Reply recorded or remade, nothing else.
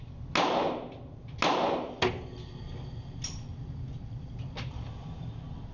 recorded